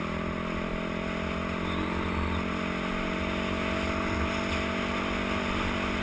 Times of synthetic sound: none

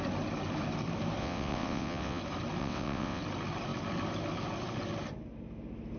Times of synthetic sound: 1.2-2.2 (vocoder, WaveNeXt); 2.6-3.2

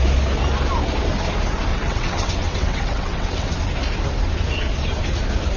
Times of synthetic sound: 1.7-3.5 (vocoder, WaveNeXt)

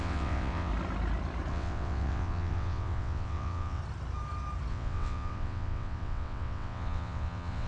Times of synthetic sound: 0.0-0.7 (vocoder, WaveNeXt); 1.5-3.8; 4.7-7.7